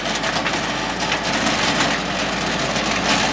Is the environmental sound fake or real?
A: real